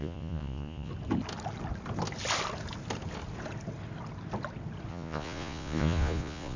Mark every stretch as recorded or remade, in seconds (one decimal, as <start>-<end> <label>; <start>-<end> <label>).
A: 0.0-0.9 remade; 0.9-4.9 recorded; 4.9-6.6 remade